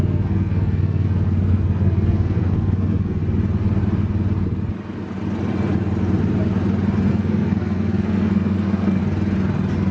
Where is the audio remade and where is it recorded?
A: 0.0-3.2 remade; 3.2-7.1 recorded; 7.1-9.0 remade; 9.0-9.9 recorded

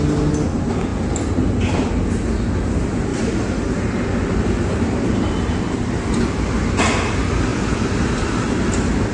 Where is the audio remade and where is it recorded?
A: 0.0-9.1 recorded

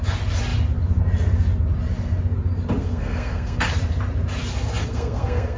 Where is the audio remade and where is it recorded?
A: 0.0-2.8 recorded; 2.8-3.7 remade; 3.7-4.8 recorded; 4.8-5.6 remade